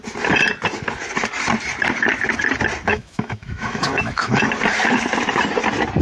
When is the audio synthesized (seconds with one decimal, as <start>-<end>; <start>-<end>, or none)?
2.9-4.4